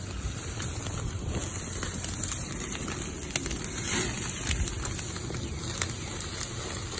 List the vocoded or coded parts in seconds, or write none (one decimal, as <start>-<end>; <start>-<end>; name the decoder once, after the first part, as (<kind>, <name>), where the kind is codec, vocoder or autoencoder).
none